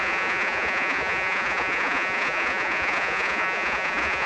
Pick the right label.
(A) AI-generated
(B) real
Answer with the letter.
A